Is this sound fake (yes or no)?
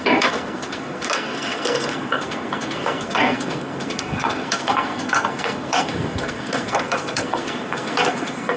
yes